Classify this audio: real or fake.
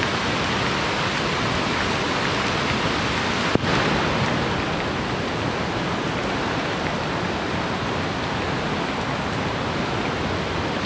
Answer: real